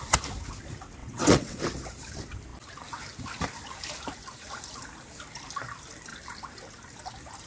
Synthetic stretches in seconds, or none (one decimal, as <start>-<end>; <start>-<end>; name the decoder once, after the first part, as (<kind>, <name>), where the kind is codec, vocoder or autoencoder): 1.0-1.6 (vocoder, WaveNeXt)